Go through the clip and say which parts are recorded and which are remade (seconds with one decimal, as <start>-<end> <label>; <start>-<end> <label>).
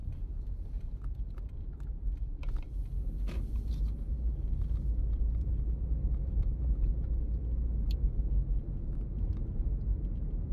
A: 0.0-6.5 remade; 6.5-10.1 recorded; 10.1-10.5 remade